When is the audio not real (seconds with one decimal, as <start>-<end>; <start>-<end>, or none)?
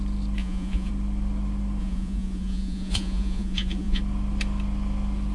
0.4-0.9; 1.8-4.0